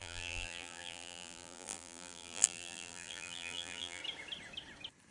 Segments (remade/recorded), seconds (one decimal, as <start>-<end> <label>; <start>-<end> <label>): 0.0-4.0 remade; 4.0-5.1 recorded